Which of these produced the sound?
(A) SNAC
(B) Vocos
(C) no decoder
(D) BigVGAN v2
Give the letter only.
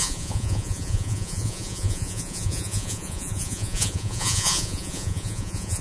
B